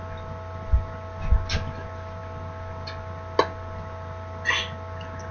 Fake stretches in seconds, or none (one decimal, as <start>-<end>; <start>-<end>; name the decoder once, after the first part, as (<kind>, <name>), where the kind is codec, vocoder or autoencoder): none